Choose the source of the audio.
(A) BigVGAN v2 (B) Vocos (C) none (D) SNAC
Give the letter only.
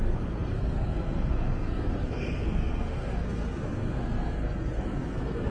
D